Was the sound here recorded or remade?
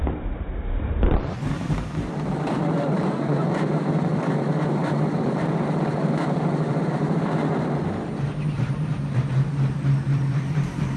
remade